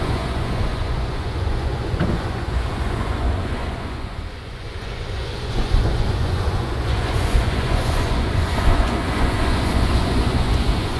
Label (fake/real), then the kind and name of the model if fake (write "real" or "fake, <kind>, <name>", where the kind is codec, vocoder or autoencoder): fake, vocoder, Vocos